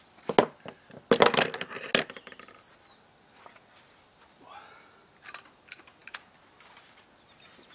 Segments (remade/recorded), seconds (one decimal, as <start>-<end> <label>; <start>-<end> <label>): 0.0-7.7 recorded